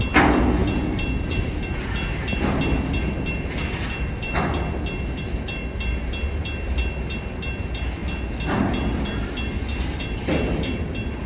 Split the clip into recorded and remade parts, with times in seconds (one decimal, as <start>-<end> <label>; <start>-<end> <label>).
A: 0.0-11.3 recorded